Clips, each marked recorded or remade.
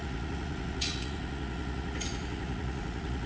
remade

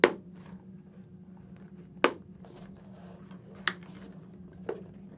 recorded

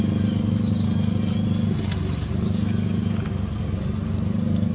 recorded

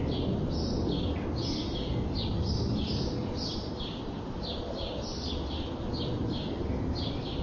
recorded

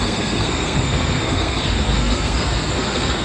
remade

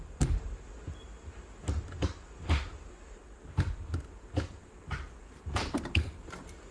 recorded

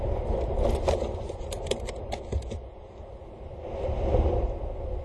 recorded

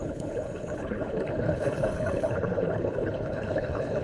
remade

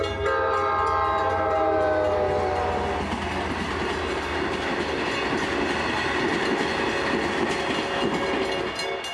recorded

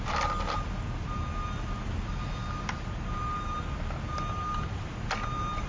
recorded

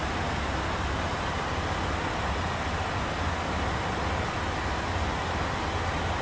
recorded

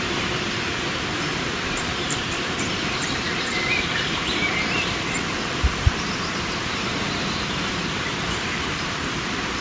remade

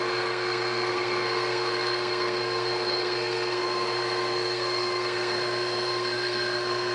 remade